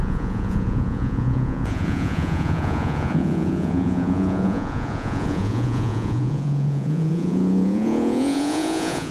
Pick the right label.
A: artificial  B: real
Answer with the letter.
A